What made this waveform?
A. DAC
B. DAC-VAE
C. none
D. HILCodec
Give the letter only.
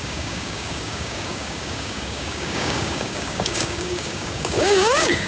A